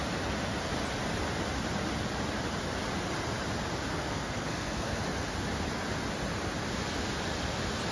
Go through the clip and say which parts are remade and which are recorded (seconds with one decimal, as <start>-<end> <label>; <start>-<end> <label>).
0.0-3.9 recorded; 3.9-5.0 remade; 5.0-7.9 recorded